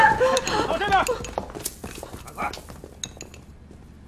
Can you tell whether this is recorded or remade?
recorded